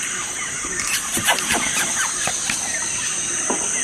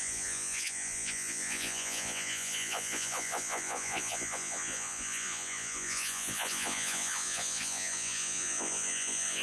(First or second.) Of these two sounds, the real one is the first